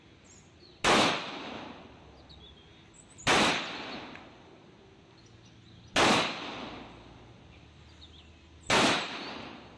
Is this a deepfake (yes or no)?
no